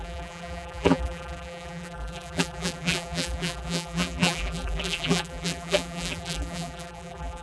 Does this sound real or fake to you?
fake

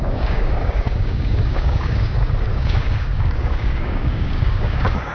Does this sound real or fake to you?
fake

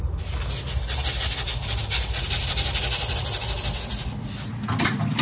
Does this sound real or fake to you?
real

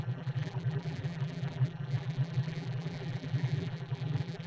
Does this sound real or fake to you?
fake